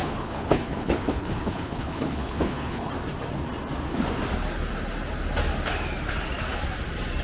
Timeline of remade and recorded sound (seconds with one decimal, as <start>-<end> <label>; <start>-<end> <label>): 0.0-2.9 remade; 2.9-7.2 recorded